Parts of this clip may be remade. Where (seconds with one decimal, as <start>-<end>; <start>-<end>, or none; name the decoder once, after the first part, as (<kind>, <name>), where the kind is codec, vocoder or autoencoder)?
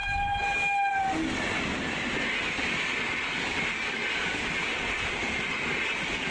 none